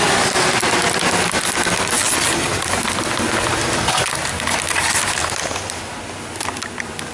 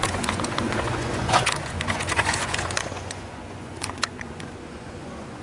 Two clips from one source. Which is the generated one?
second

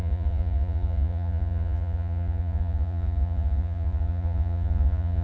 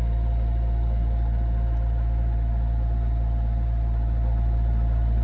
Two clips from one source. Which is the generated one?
first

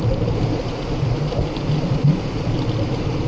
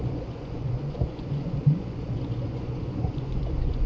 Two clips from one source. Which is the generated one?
second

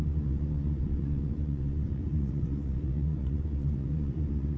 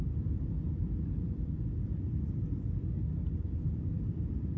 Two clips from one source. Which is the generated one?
first